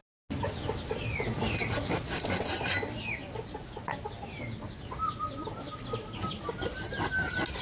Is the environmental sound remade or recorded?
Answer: recorded